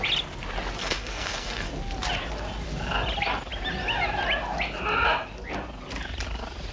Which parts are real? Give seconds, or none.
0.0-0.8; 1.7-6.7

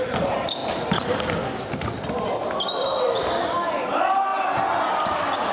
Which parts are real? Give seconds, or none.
0.0-5.5

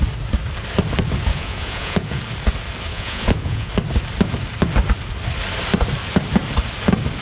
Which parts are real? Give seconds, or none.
0.0-1.3; 2.2-2.9; 3.7-7.2